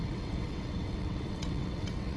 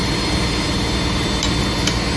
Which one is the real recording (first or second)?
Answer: second